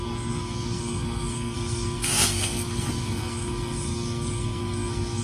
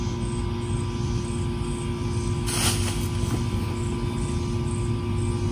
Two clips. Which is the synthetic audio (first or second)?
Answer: first